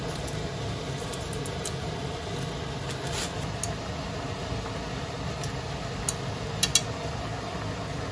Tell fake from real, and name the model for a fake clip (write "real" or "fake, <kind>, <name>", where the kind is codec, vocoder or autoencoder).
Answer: real